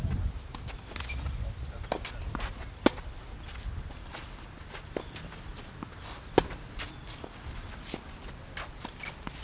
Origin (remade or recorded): recorded